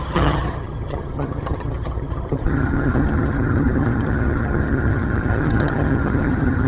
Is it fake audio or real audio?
fake